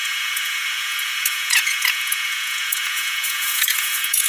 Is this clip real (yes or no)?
no